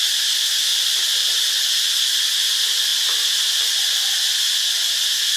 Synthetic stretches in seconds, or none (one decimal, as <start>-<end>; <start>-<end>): none